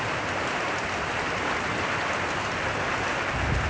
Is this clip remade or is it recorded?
recorded